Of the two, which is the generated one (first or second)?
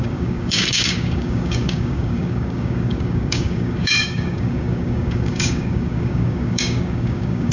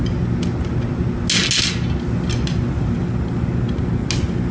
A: first